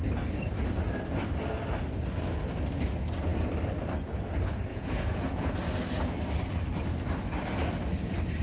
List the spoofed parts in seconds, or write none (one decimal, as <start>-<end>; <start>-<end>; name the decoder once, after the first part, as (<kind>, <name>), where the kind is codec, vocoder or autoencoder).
4.7-5.5 (vocoder, Vocos)